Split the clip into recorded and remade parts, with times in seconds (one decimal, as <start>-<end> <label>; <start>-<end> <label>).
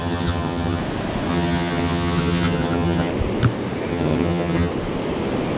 0.0-0.8 remade; 0.8-1.3 recorded; 1.3-3.1 remade; 3.1-3.9 recorded; 3.9-4.7 remade; 4.7-5.6 recorded